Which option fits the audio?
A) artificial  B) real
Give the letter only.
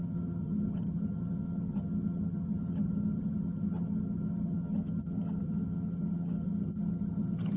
A